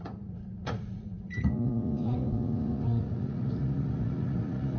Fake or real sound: fake